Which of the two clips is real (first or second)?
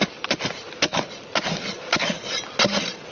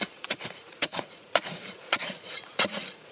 first